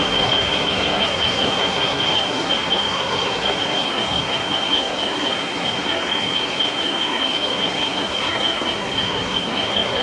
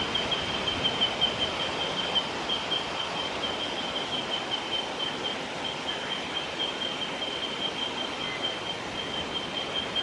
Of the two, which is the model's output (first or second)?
first